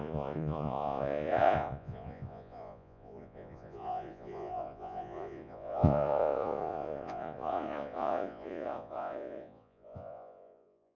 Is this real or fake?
fake